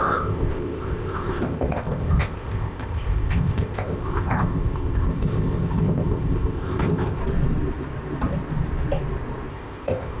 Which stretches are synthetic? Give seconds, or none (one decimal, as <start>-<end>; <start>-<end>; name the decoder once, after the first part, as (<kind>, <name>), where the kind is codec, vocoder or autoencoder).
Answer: 0.0-7.2 (codec, ZipCodec); 9.5-10.2